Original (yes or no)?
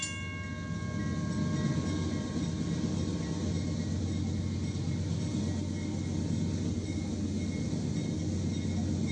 yes